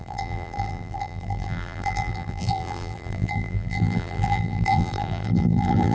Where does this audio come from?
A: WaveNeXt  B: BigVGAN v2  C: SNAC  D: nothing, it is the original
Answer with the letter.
B